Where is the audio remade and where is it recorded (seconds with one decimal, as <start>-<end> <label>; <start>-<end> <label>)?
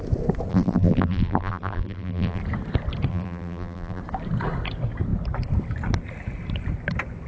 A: 0.0-0.5 recorded; 0.5-2.4 remade; 2.4-3.1 recorded; 3.1-4.0 remade; 4.0-7.3 recorded